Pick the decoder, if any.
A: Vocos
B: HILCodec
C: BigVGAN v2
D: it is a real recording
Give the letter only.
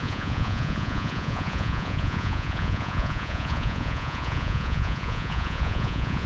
A